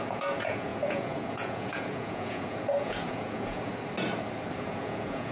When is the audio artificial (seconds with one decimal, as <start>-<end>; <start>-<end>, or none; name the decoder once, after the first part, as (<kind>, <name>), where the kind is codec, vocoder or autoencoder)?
0.0-3.7 (vocoder, Vocos); 4.6-5.3